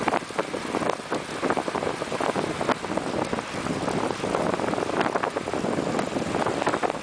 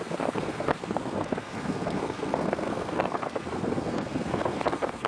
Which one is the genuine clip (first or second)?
first